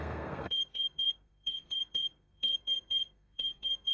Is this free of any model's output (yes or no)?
no